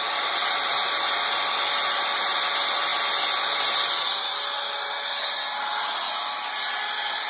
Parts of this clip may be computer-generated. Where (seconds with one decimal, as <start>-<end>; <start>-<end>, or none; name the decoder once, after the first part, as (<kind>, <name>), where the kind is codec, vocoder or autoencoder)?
none